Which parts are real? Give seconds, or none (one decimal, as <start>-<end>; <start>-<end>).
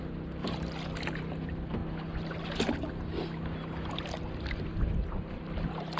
0.0-6.0